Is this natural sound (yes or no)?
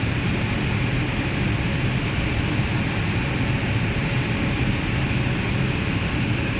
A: yes